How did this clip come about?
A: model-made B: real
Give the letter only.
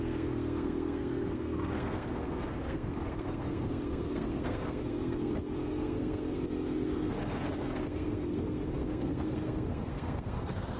A